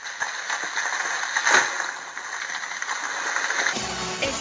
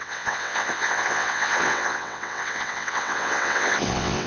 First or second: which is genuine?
first